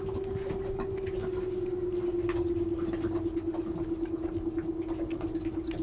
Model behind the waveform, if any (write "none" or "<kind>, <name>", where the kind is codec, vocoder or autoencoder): none